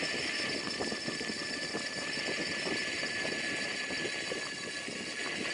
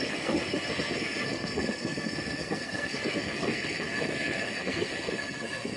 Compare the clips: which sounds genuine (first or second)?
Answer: first